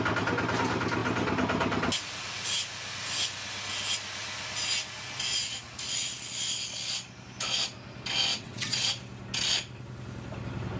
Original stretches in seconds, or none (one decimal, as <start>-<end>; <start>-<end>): 0.0-8.3; 8.9-10.8